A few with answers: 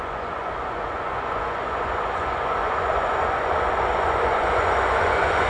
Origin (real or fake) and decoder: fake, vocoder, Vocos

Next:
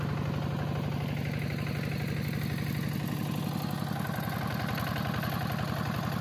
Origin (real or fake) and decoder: real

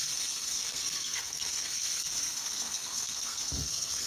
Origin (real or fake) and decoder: fake, codec, SNAC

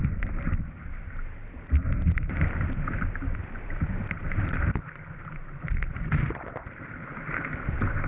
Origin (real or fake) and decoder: fake, vocoder, BigVGAN v2